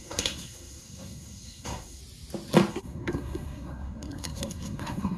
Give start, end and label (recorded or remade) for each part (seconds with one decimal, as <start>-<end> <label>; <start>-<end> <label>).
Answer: 0.0-2.0 remade; 2.0-2.7 recorded; 2.7-5.2 remade